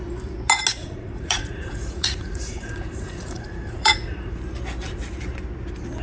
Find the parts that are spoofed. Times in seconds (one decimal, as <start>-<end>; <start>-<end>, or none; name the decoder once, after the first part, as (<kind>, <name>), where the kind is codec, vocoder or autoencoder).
0.8-4.4 (vocoder, Vocos)